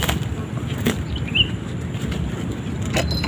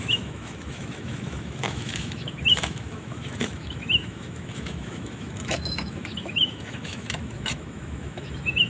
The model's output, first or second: second